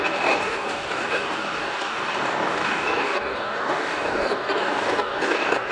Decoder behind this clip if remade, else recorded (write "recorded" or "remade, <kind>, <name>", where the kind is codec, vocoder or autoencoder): remade, codec, DAC